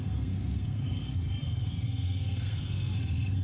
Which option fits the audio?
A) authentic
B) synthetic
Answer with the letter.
B